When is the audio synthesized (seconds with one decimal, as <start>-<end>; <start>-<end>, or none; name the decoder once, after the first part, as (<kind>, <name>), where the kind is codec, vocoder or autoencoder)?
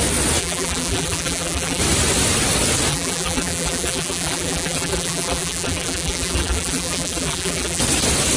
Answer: 0.4-1.8 (vocoder, BigVGAN v2); 2.9-7.8